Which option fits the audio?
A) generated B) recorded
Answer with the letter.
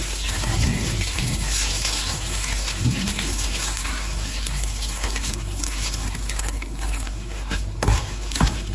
A